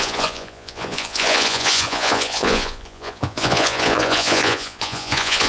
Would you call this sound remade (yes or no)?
yes